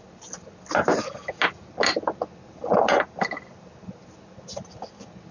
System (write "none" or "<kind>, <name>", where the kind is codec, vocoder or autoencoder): none